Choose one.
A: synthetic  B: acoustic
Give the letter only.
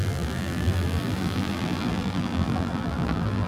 A